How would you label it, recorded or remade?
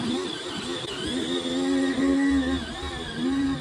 recorded